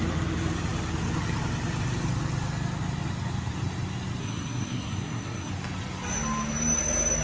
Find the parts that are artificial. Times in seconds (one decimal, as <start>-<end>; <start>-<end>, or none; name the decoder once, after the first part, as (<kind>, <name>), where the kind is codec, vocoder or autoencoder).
4.2-5.5 (codec, SNAC)